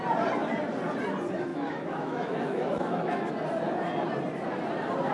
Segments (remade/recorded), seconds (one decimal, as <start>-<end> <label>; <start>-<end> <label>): 0.0-1.5 recorded; 1.5-3.3 remade; 3.3-5.1 recorded